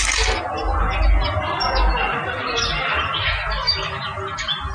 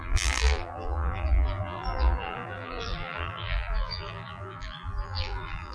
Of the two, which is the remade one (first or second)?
second